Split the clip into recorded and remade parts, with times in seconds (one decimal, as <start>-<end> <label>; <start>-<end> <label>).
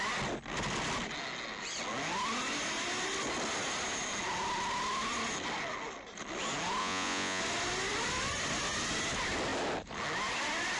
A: 0.0-6.8 recorded; 6.8-7.4 remade; 7.4-10.8 recorded